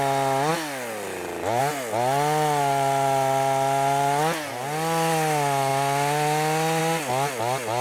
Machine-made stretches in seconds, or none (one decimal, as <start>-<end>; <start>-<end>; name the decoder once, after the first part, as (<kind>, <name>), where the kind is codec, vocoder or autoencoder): none